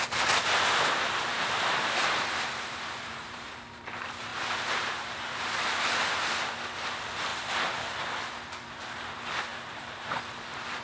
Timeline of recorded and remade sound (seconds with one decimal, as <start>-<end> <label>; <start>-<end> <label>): 0.0-1.3 recorded; 1.3-3.8 remade; 3.8-4.3 recorded; 4.3-5.4 remade; 5.4-9.5 recorded; 9.5-10.2 remade; 10.2-10.8 recorded